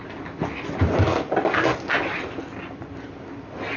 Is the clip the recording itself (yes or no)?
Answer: yes